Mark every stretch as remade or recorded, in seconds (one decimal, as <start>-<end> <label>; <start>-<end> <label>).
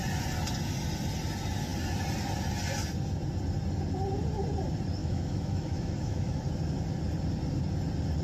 0.0-5.0 recorded; 5.0-6.4 remade; 6.4-8.2 recorded